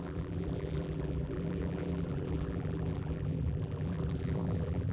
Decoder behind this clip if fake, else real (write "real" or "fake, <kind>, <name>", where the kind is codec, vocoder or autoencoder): fake, vocoder, BigVGAN v2